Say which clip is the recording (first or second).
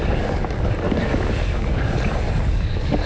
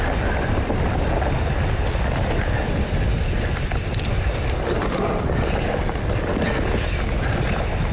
second